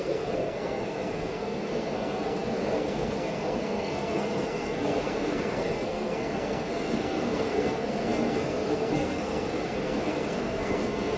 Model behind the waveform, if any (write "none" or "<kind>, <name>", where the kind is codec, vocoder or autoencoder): codec, SNAC